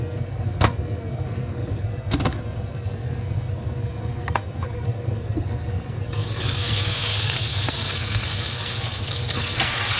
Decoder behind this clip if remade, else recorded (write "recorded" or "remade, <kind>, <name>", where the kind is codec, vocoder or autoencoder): remade, codec, SNAC